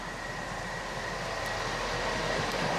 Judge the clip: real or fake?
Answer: real